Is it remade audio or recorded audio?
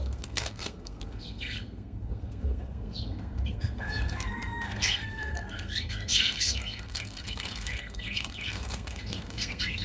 remade